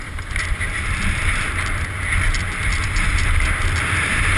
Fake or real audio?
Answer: real